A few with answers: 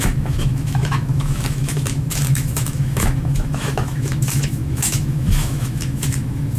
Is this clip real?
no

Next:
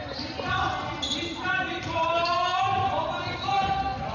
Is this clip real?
yes